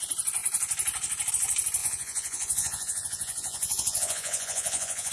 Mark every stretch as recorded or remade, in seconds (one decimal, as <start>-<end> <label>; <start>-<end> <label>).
0.0-1.8 recorded; 1.8-5.1 remade